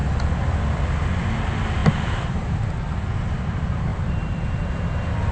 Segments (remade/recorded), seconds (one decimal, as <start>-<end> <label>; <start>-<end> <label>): 0.0-1.8 recorded; 1.8-2.6 remade; 2.6-3.9 recorded; 3.9-4.7 remade; 4.7-5.3 recorded